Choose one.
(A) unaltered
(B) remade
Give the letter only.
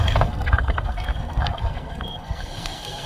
B